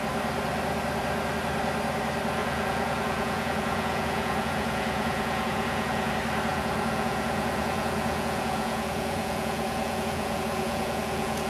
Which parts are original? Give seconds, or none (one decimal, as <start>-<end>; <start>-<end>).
0.0-2.4; 6.1-6.5